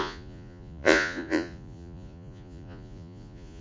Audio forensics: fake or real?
fake